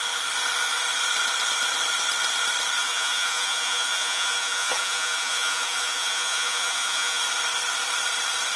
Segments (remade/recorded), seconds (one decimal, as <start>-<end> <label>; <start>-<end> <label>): 0.0-2.8 recorded; 2.8-7.2 remade; 7.2-8.6 recorded